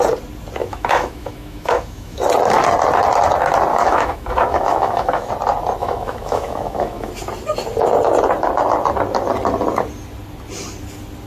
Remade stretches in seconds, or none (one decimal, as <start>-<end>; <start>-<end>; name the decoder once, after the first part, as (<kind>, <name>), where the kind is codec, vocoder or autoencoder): 0.6-2.2 (autoencoder, DAC-VAE); 3.7-5.3; 5.8-7.1